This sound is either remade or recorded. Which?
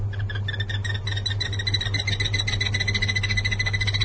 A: recorded